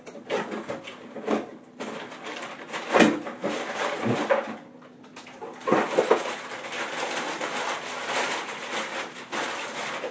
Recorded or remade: recorded